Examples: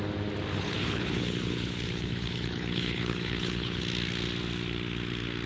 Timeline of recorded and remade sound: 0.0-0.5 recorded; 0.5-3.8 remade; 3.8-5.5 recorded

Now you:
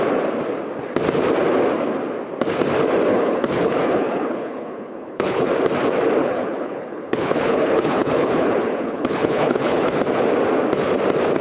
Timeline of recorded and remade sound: 0.0-3.1 recorded; 3.1-5.5 remade; 5.5-6.2 recorded; 6.2-10.0 remade; 10.0-11.4 recorded

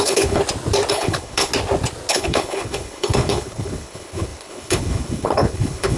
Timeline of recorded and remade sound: 0.0-0.4 remade; 0.4-0.9 recorded; 0.9-1.5 remade; 1.5-2.1 recorded; 2.1-6.0 remade

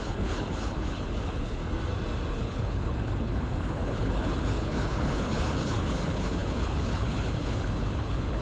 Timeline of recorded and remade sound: 0.0-1.6 remade; 1.6-2.3 recorded; 2.3-8.4 remade

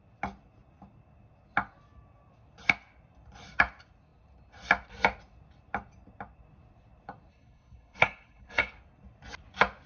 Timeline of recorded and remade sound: 0.0-7.3 recorded; 7.3-8.7 remade; 8.7-9.9 recorded